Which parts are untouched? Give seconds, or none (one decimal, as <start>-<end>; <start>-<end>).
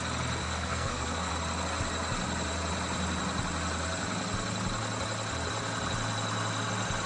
0.0-0.4; 1.3-7.1